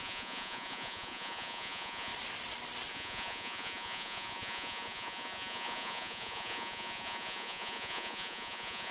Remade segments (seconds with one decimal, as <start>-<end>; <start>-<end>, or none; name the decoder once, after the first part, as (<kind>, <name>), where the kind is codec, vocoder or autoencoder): 0.0-2.1 (vocoder, Vocos); 2.9-8.9